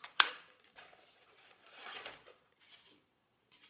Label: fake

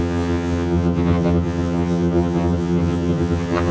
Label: fake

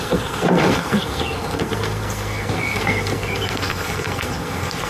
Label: fake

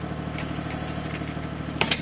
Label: real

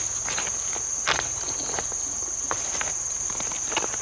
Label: real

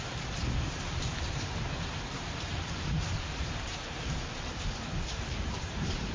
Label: fake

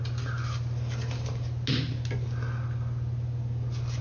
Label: real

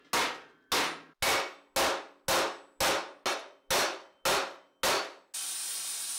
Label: real